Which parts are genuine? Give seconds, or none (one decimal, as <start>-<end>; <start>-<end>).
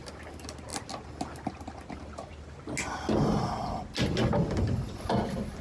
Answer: 0.0-5.6